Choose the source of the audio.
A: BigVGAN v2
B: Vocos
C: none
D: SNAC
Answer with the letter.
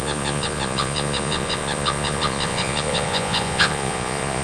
B